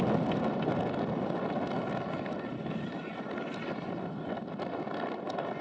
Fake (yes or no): no